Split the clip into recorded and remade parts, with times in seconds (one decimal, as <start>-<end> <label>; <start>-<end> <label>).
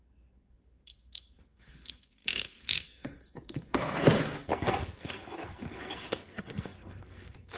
0.0-7.6 remade